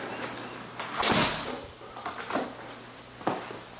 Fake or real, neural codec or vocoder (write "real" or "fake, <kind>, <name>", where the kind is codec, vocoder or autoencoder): real